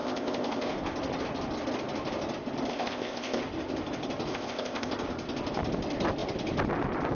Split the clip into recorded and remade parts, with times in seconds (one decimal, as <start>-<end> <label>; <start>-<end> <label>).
0.0-0.7 remade; 0.7-2.7 recorded; 2.7-3.4 remade; 3.4-4.3 recorded; 4.3-4.9 remade; 4.9-7.1 recorded